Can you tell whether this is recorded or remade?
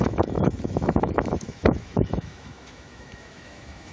remade